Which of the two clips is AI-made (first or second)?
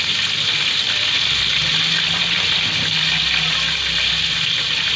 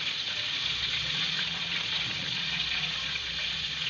second